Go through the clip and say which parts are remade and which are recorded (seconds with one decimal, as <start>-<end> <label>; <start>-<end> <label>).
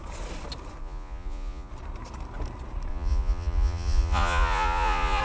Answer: 0.0-0.8 recorded; 0.8-1.7 remade; 1.7-2.9 recorded; 2.9-5.2 remade